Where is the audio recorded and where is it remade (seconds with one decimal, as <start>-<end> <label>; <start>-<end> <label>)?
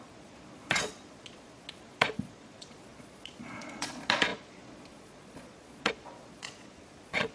0.0-7.3 remade